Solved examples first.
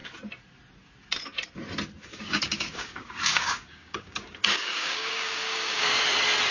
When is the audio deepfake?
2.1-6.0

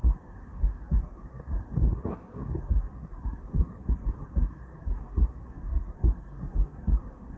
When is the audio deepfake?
0.0-7.4

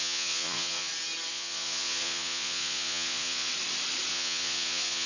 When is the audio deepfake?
0.0-0.9; 1.3-3.5; 4.1-5.1